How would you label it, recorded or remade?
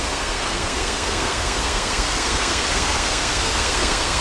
remade